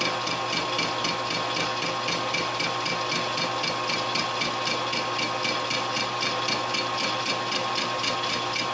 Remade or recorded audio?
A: recorded